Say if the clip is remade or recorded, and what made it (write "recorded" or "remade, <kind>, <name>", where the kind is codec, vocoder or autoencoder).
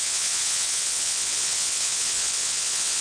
remade, vocoder, WaveNeXt